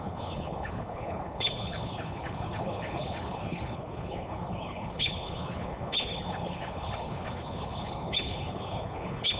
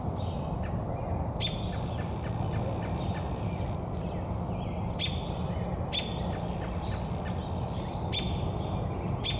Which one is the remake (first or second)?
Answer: first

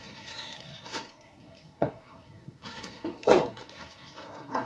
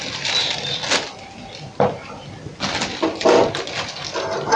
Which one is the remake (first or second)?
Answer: first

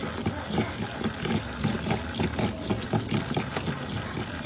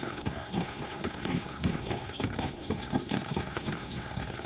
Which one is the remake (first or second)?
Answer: second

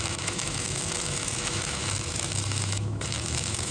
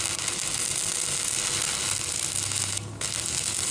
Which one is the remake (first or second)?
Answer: first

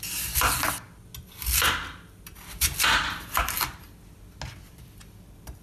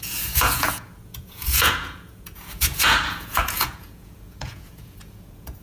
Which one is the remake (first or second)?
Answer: second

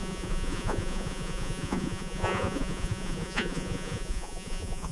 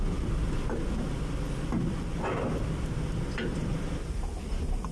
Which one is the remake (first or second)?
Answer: first